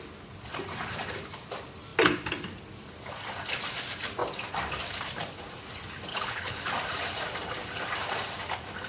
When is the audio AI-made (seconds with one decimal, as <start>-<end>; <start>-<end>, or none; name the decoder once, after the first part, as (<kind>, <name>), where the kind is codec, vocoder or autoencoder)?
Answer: 6.1-6.6 (codec, HILCodec)